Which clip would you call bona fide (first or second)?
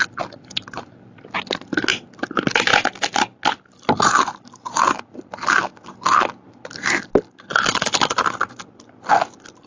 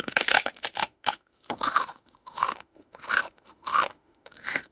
first